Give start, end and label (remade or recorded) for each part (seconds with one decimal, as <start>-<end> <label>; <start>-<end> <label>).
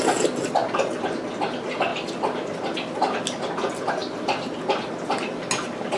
0.0-1.9 recorded; 1.9-3.0 remade; 3.0-6.0 recorded